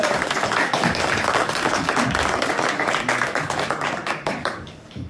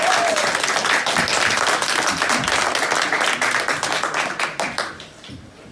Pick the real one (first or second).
second